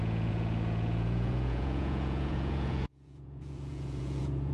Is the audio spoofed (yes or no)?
yes